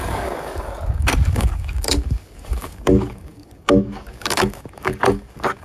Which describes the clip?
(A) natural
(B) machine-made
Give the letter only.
B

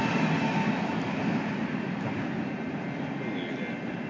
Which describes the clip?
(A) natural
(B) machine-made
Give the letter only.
A